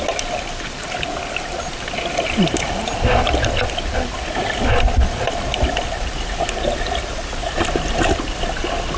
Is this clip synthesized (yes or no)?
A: no